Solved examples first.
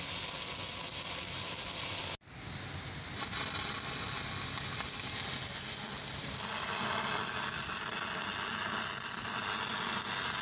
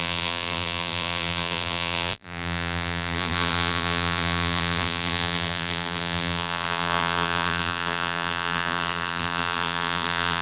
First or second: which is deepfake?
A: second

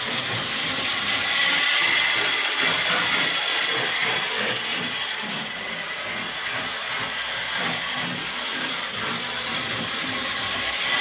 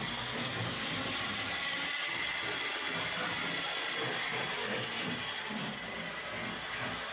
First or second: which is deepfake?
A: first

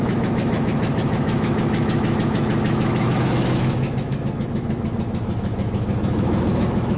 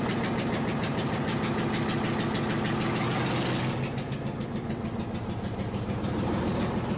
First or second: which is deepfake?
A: first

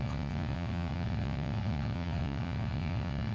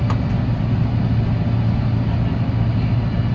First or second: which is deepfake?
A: first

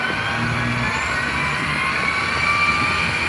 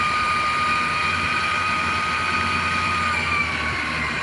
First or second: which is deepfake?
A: second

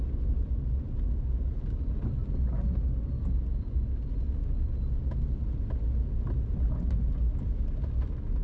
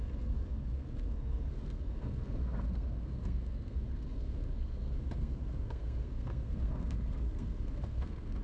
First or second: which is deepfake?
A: second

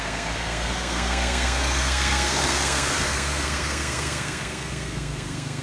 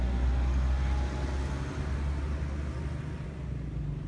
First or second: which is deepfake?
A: first